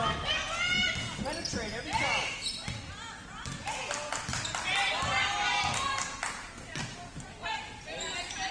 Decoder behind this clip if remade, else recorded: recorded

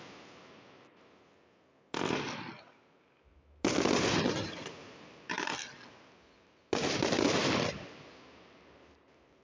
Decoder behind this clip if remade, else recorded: recorded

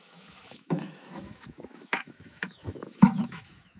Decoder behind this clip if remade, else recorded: remade, autoencoder, DAC-VAE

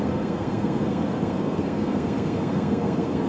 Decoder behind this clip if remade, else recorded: remade, codec, SNAC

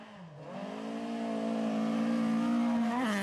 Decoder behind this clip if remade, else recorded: recorded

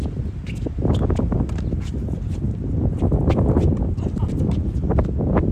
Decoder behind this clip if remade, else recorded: recorded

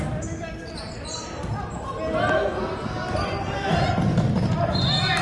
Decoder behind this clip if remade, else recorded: recorded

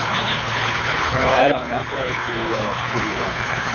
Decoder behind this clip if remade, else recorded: remade, codec, HILCodec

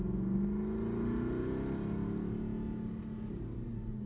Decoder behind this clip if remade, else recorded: recorded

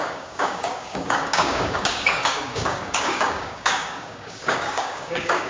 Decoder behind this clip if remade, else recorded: remade, codec, DAC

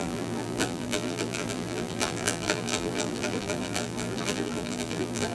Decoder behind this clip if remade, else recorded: remade, vocoder, BigVGAN v2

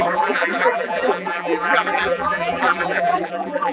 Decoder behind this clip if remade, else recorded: remade, vocoder, BigVGAN v2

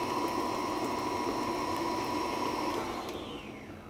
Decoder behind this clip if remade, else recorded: recorded